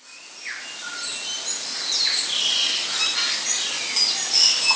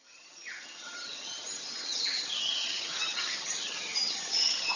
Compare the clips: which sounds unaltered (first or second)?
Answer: first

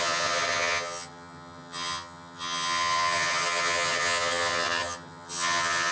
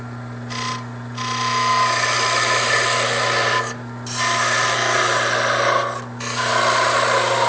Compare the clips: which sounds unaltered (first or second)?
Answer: second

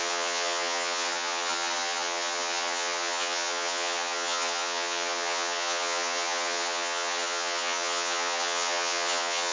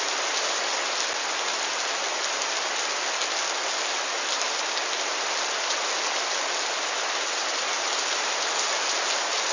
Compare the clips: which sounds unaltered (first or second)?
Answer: second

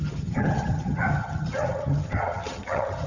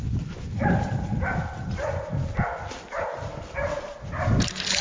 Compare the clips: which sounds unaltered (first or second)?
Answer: second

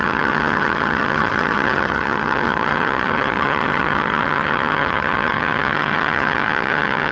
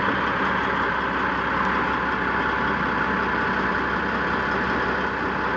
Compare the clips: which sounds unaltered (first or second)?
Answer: second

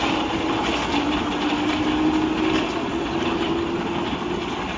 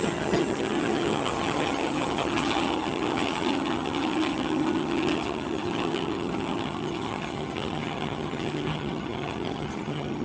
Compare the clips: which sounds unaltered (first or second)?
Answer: first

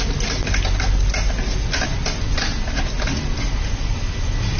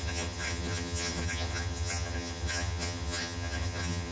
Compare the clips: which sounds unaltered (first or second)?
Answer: first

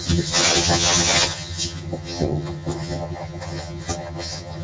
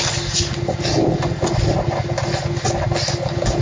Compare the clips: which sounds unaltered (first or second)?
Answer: second